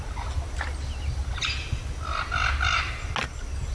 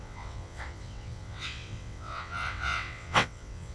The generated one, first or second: second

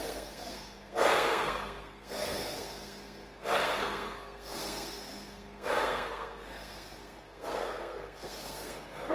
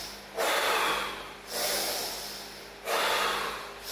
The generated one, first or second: first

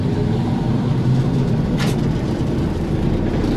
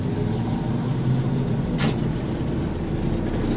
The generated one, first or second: first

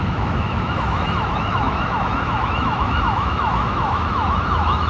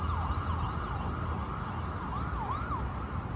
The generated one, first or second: first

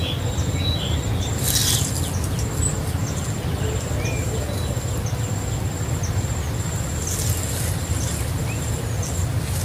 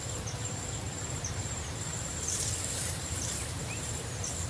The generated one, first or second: second